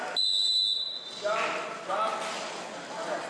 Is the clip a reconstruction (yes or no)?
no